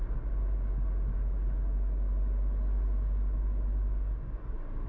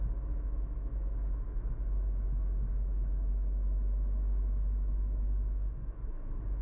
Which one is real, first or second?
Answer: first